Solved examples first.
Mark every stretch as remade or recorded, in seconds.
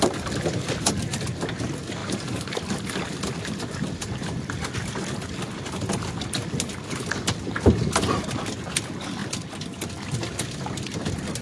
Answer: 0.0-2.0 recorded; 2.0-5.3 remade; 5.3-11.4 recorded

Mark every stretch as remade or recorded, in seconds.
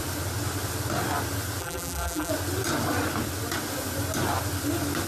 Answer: 0.0-1.6 recorded; 1.6-2.3 remade; 2.3-5.1 recorded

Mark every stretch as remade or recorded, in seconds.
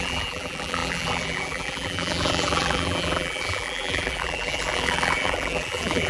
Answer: 0.0-6.1 remade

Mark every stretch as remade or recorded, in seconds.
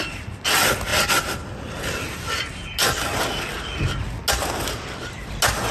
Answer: 0.0-5.7 recorded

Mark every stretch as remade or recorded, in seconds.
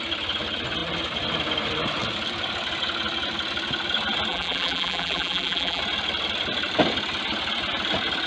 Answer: 0.0-4.3 recorded; 4.3-5.8 remade; 5.8-8.3 recorded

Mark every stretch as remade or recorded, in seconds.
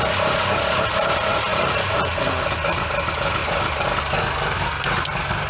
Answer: 0.0-1.5 recorded; 1.5-2.1 remade; 2.1-3.4 recorded; 3.4-4.0 remade; 4.0-5.5 recorded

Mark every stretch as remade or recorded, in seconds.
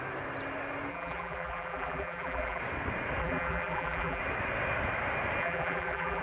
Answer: 0.0-0.9 recorded; 0.9-2.6 remade; 2.6-3.2 recorded; 3.2-4.2 remade; 4.2-5.4 recorded; 5.4-6.2 remade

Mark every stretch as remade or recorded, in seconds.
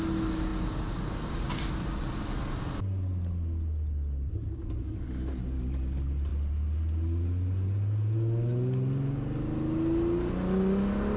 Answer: 0.0-11.2 recorded